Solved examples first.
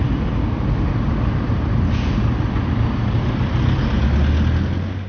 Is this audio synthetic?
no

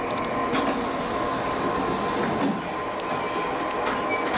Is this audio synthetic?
no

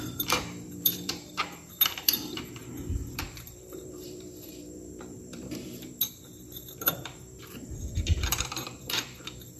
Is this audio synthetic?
yes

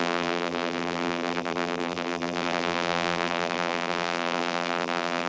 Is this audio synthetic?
yes